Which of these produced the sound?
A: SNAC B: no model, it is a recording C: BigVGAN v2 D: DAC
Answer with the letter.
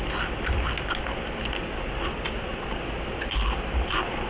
B